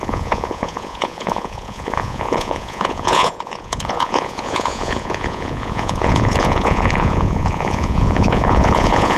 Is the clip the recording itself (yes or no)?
no